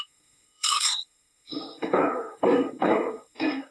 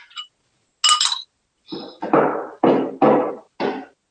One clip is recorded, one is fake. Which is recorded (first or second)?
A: second